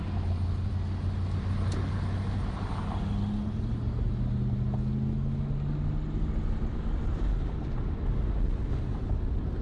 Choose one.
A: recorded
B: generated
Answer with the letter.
A